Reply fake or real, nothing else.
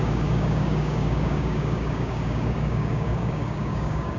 fake